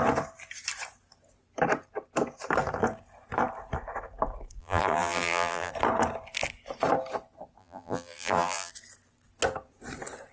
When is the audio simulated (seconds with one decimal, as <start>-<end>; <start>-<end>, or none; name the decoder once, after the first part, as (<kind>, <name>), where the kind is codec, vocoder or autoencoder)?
4.6-5.7 (vocoder, BigVGAN v2); 7.6-8.7